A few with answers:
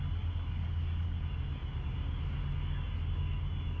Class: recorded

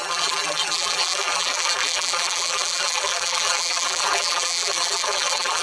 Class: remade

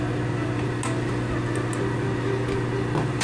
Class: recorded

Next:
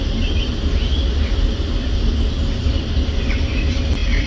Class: recorded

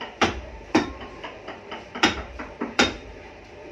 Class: remade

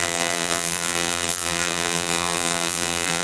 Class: remade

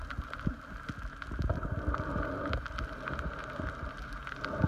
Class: recorded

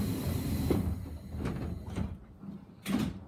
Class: recorded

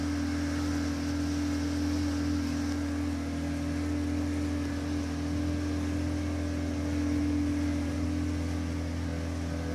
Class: recorded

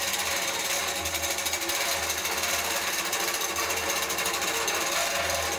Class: recorded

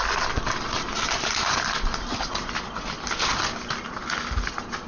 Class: recorded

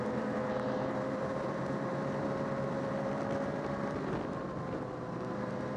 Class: remade